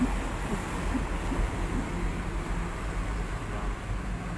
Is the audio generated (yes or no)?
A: no